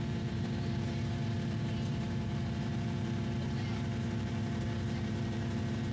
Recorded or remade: remade